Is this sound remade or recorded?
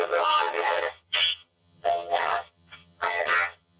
remade